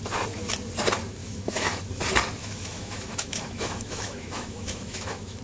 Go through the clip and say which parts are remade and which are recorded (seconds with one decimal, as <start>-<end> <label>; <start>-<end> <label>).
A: 0.0-1.2 recorded; 1.2-1.8 remade; 1.8-2.4 recorded; 2.4-5.4 remade